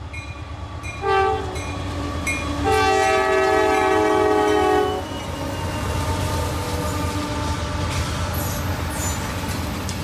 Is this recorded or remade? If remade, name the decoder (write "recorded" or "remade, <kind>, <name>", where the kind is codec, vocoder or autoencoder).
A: recorded